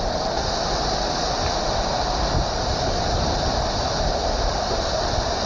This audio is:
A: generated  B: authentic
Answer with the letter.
B